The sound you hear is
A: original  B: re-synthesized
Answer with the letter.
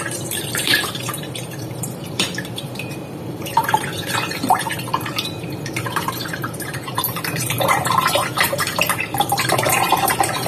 B